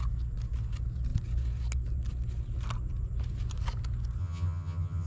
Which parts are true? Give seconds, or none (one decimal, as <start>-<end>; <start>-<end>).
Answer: 0.0-4.2